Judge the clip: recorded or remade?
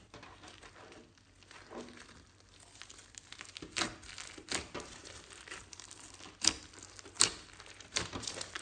recorded